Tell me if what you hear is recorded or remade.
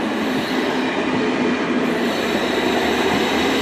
recorded